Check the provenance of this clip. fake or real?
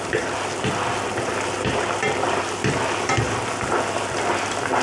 real